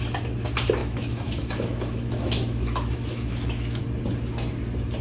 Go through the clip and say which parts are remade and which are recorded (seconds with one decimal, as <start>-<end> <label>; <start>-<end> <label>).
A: 0.0-0.8 recorded; 0.8-3.8 remade; 3.8-5.0 recorded